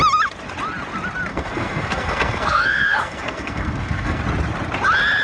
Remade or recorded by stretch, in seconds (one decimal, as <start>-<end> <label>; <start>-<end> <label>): 0.0-1.3 recorded; 1.3-4.2 remade; 4.2-5.2 recorded